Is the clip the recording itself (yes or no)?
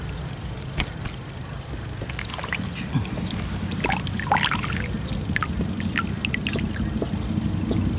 yes